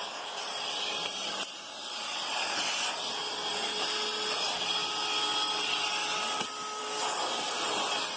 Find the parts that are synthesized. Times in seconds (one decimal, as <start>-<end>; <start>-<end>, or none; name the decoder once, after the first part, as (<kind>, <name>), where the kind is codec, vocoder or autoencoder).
0.0-1.7 (vocoder, BigVGAN v2); 3.5-4.8; 5.6-6.0; 6.8-8.2